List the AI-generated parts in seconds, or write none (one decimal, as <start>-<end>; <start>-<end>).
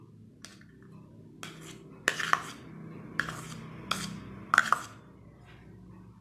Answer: none